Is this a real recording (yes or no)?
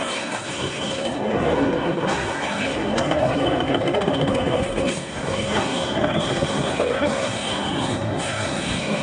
no